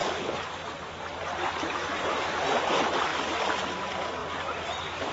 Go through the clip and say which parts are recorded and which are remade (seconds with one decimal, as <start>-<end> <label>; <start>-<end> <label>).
0.0-5.1 recorded